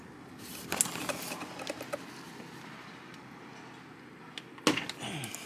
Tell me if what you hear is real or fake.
real